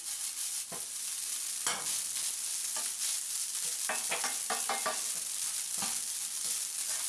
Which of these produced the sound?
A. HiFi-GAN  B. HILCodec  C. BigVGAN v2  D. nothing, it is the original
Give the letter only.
D